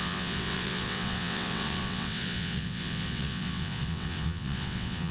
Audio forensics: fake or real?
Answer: fake